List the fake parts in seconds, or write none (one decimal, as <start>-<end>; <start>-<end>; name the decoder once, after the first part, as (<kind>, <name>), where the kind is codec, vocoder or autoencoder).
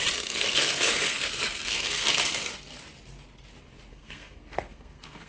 0.0-2.5 (codec, SNAC); 3.9-5.3